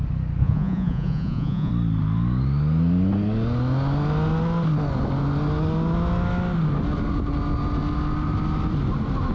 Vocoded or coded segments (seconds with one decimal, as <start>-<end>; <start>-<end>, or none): 0.4-1.7